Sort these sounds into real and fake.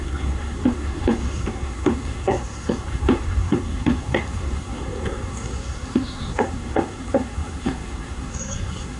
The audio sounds fake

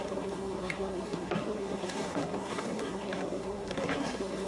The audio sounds fake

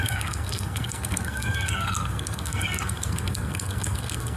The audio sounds fake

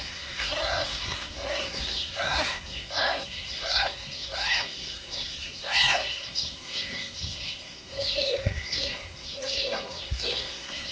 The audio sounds fake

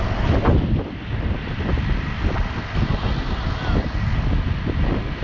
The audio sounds real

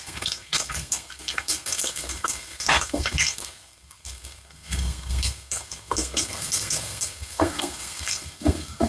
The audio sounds fake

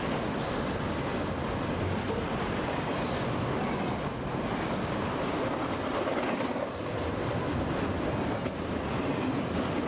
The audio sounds real